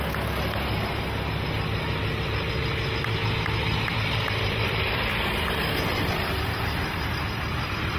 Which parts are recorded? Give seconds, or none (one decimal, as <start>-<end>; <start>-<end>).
0.0-3.9